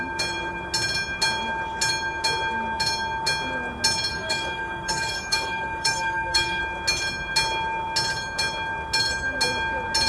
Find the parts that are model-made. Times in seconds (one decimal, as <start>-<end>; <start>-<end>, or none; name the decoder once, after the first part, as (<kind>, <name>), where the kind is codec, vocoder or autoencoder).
4.1-6.6 (codec, DAC)